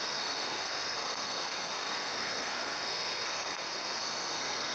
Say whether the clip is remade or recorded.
remade